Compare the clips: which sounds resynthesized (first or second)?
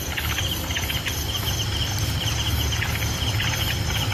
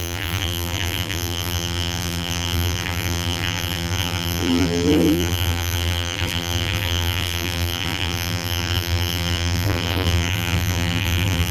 second